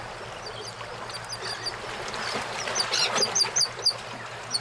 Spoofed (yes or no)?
no